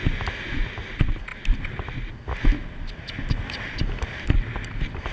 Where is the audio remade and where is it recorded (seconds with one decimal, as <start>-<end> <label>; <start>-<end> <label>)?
0.0-5.1 recorded